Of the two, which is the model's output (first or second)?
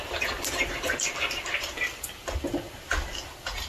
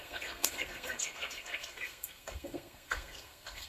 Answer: second